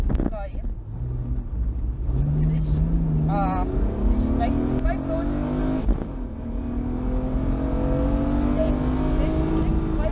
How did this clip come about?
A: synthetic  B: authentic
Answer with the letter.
B